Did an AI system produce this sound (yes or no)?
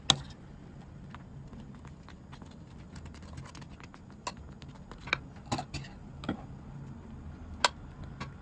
no